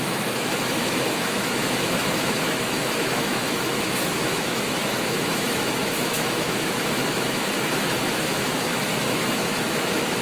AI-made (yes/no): yes